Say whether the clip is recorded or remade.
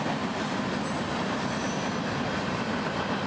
remade